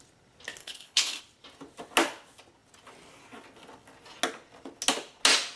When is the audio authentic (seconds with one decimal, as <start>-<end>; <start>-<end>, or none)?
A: 0.0-0.6; 1.2-5.6